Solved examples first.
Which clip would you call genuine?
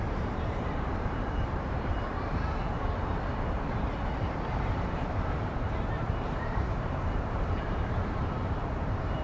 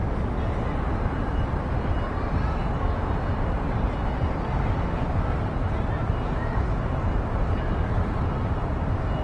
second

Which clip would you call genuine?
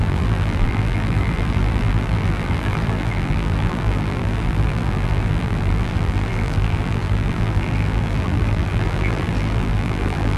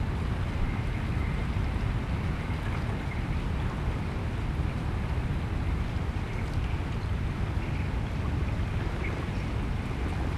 second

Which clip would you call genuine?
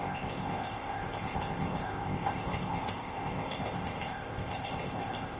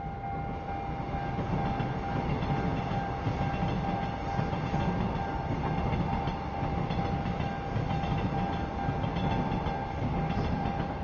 second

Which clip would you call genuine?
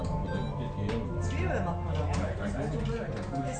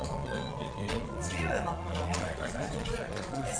first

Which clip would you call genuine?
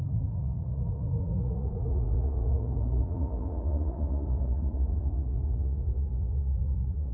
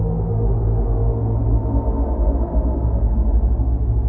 second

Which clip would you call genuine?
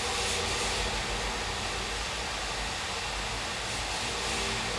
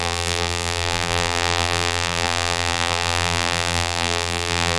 first